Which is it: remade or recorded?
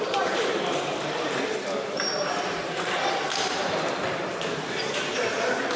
remade